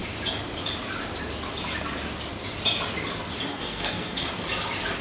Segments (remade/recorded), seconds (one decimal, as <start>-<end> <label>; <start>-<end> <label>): 0.0-3.5 recorded; 3.5-4.3 remade; 4.3-5.0 recorded